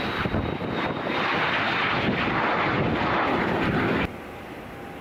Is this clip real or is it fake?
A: real